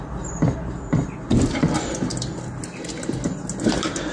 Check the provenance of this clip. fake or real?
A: real